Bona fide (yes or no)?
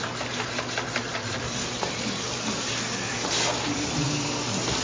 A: yes